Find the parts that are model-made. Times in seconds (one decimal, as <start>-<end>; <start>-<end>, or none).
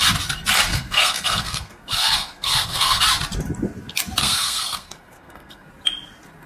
0.7-3.0; 4.2-5.7